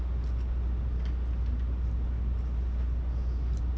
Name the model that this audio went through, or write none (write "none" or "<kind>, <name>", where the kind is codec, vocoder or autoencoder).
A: none